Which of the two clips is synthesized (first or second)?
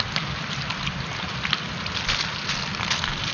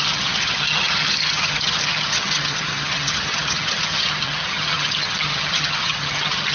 second